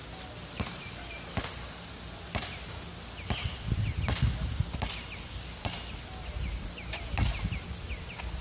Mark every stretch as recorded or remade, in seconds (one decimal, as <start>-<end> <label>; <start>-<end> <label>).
0.0-8.4 recorded